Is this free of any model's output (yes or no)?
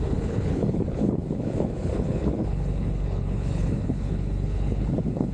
no